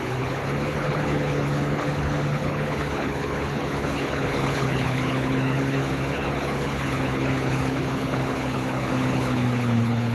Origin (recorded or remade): remade